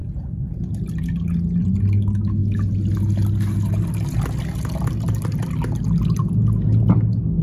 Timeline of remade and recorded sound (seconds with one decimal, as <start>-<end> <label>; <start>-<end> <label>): 0.0-7.4 recorded